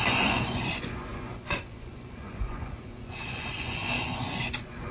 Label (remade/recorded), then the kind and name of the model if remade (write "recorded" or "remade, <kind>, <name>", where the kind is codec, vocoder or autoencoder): remade, vocoder, Vocos